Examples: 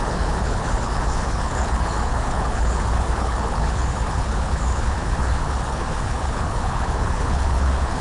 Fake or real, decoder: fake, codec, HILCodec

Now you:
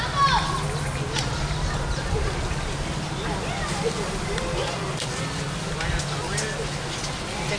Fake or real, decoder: real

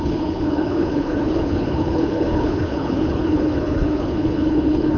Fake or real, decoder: fake, codec, HILCodec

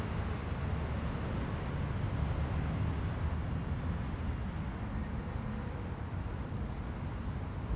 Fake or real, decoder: real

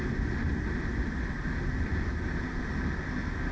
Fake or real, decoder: real